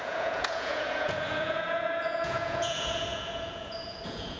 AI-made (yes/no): yes